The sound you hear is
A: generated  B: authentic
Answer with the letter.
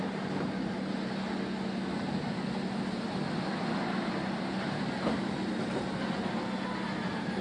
B